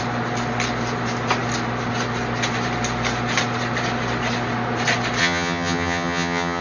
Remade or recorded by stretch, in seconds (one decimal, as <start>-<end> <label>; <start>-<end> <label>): 0.0-5.2 recorded; 5.2-6.6 remade